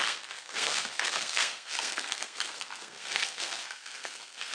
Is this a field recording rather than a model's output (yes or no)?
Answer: no